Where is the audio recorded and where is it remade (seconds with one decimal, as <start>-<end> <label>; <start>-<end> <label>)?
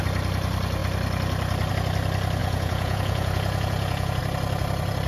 0.0-2.4 recorded; 2.4-4.2 remade; 4.2-5.1 recorded